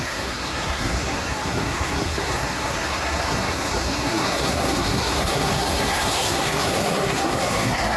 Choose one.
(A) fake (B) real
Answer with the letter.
A